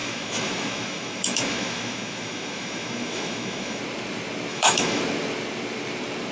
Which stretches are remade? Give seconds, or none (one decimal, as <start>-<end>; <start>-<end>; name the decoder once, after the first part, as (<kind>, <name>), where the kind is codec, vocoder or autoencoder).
0.0-3.8 (autoencoder, DAC-VAE); 4.5-5.0